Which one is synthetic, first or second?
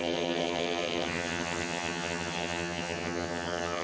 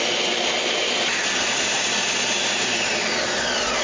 first